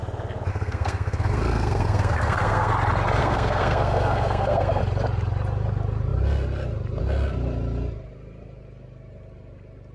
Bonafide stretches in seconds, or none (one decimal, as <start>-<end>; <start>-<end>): 0.0-0.5; 2.7-3.2; 4.8-9.9